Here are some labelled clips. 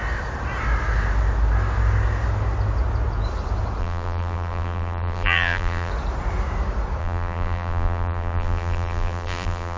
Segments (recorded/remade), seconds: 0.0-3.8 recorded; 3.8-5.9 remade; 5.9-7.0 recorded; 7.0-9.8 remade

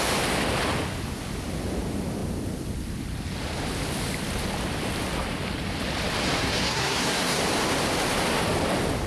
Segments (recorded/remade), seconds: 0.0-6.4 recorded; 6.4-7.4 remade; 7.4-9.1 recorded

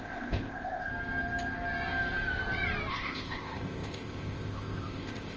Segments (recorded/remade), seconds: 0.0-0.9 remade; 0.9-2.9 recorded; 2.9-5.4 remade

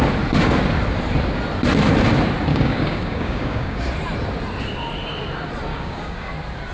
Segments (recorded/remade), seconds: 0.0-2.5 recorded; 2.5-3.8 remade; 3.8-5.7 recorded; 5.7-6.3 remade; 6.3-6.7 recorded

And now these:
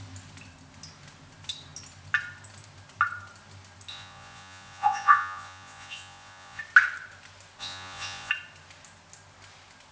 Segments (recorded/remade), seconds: 0.0-3.9 recorded; 3.9-6.6 remade; 6.6-7.6 recorded; 7.6-8.3 remade; 8.3-9.9 recorded

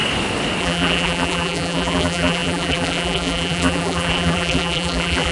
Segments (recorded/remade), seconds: 0.0-0.6 recorded; 0.6-5.3 remade